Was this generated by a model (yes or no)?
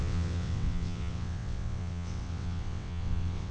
yes